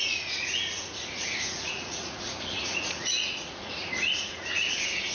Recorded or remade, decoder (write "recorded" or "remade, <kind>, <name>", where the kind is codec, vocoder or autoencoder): remade, vocoder, Vocos